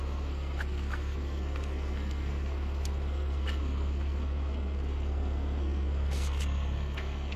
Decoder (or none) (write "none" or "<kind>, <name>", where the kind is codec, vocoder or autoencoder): codec, SNAC